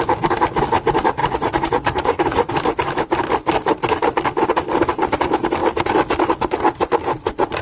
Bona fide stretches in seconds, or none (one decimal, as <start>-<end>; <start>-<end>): 0.0-1.2; 2.5-7.6